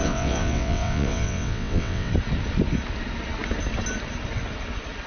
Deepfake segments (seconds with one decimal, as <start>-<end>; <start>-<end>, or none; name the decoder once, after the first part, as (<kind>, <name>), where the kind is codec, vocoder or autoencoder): 0.0-2.1 (vocoder, WaveNeXt)